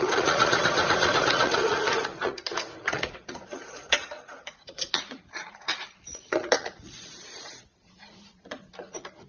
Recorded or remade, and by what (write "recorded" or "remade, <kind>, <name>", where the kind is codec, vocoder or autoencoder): remade, vocoder, Vocos